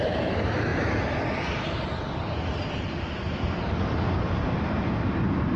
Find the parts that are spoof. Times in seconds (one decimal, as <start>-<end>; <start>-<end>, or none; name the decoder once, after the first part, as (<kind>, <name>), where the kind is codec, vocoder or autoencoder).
none